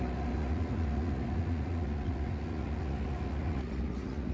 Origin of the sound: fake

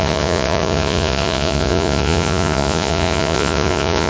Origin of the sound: fake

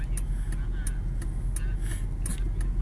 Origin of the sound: real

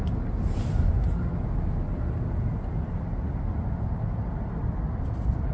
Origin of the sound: real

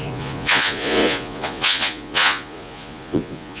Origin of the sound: fake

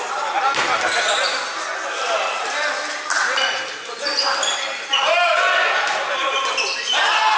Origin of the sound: real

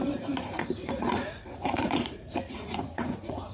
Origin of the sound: fake